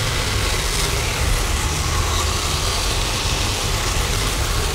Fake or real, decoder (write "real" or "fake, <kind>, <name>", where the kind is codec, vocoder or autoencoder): real